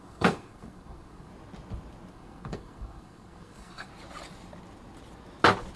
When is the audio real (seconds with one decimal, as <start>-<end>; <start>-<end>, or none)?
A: 1.3-2.1; 3.9-5.8

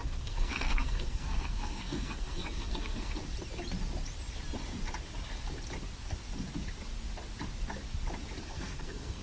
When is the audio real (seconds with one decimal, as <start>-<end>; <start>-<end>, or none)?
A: 3.2-8.4